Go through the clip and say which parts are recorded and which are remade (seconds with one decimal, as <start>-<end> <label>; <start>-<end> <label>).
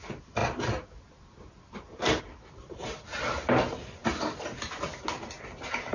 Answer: 0.0-0.4 recorded; 0.4-2.2 remade; 2.2-5.9 recorded